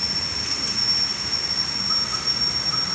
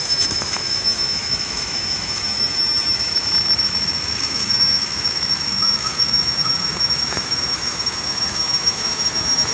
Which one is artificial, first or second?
second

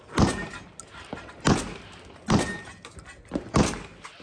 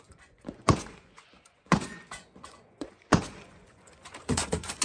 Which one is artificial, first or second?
second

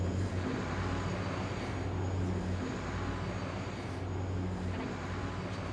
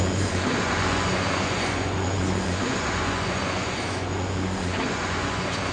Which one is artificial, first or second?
second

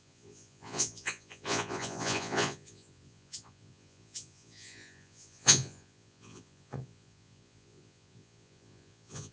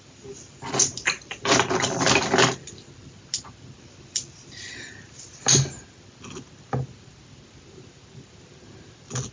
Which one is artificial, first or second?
first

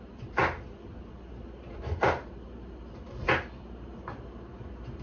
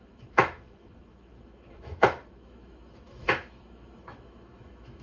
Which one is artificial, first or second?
second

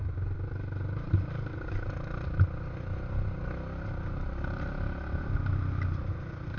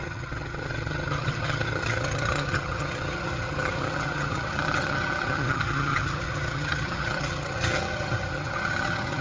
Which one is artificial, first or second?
second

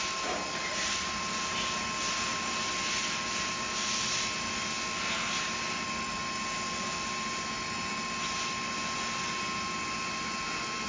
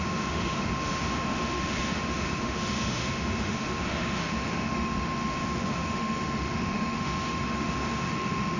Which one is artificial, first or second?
second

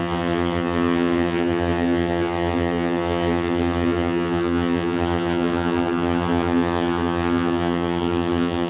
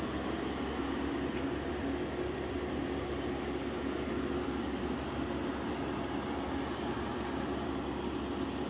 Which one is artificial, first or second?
first